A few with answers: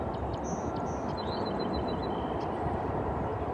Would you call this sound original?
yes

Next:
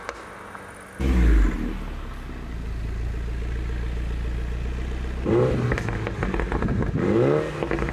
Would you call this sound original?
yes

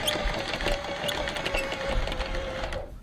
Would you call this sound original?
yes